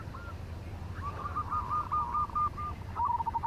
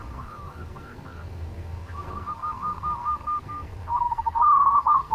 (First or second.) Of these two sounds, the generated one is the second